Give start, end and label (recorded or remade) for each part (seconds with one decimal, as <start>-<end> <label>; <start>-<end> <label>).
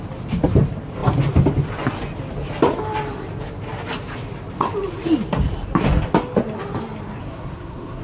0.0-7.2 recorded; 7.2-8.0 remade